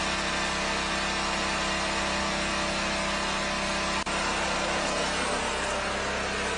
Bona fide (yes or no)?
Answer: yes